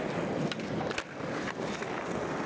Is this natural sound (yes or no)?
yes